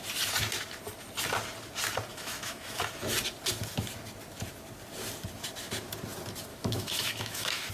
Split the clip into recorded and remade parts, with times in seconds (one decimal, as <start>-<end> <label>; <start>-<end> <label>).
0.0-2.1 recorded; 2.1-2.8 remade; 2.8-6.5 recorded; 6.5-7.7 remade